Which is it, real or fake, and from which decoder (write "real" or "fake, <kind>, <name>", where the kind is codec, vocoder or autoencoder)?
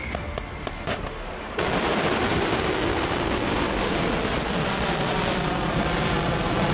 real